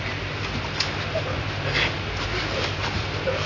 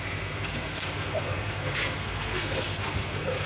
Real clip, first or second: first